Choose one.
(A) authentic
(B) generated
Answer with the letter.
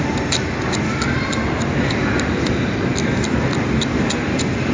A